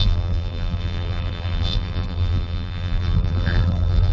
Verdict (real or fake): fake